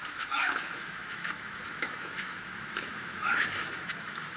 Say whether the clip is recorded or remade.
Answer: remade